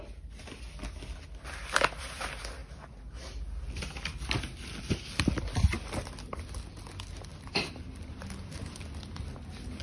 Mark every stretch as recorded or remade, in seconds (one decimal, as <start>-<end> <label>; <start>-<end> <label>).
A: 0.0-9.8 recorded